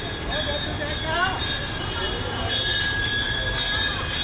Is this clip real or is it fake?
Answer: real